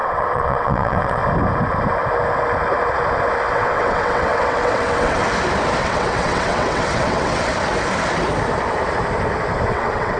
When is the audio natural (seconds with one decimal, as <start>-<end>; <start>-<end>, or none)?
1.2-3.5; 5.2-5.8; 7.5-9.7